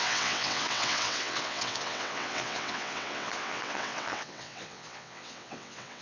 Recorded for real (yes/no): no